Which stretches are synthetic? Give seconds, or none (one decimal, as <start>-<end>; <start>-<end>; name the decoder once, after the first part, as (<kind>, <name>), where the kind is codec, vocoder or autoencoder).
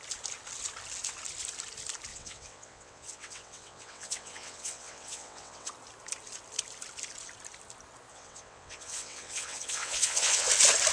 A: 2.1-5.7 (vocoder, WaveNeXt); 8.1-10.5